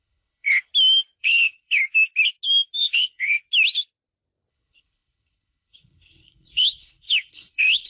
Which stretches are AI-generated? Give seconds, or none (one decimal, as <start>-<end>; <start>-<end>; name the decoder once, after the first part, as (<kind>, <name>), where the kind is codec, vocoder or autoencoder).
0.0-0.7 (codec, HILCodec); 1.2-1.8; 2.8-3.4; 4.5-7.9